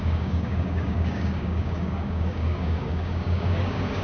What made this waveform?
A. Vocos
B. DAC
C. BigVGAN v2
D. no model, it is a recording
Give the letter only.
B